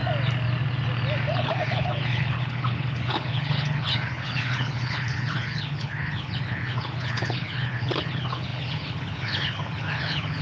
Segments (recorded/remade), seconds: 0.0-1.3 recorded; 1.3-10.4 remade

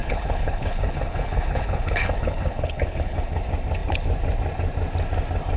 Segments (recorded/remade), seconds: 0.0-3.4 remade; 3.4-5.6 recorded

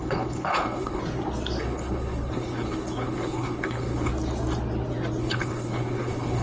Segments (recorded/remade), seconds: 0.0-1.0 remade; 1.0-1.6 recorded; 1.6-4.1 remade; 4.1-5.2 recorded; 5.2-6.4 remade

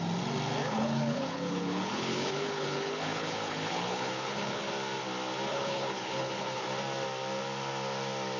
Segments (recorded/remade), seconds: 0.0-0.6 recorded; 0.6-4.6 remade; 4.6-5.5 recorded; 5.5-6.7 remade; 6.7-8.4 recorded

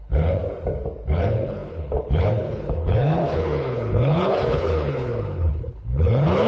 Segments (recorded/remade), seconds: 0.0-0.4 remade; 0.4-1.1 recorded; 1.1-6.5 remade